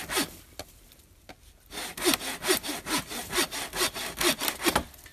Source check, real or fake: real